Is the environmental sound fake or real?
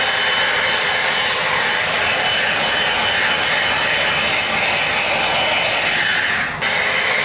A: real